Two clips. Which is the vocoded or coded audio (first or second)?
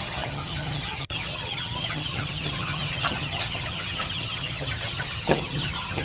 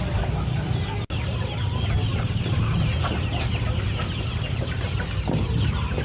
first